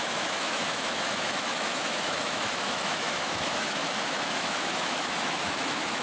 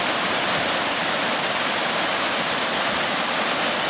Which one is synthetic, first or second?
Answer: first